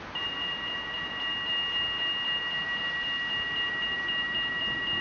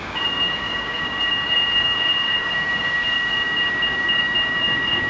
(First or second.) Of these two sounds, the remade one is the second